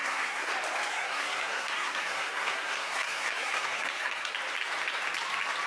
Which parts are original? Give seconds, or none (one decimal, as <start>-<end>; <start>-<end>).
0.5-0.9; 4.3-5.7